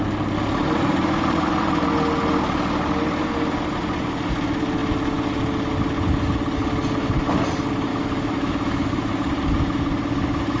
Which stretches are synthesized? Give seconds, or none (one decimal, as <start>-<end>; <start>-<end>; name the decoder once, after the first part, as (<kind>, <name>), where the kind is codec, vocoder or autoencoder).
7.9-9.1 (autoencoder, DAC-VAE)